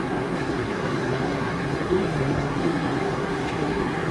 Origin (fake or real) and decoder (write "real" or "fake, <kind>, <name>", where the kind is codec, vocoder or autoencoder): fake, codec, SNAC